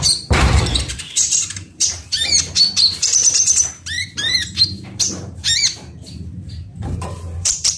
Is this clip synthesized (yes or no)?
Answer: yes